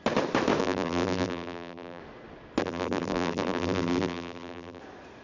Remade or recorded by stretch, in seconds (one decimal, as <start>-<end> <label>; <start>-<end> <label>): 0.0-0.6 recorded; 0.6-2.0 remade; 2.0-2.6 recorded; 2.6-4.8 remade; 4.8-5.2 recorded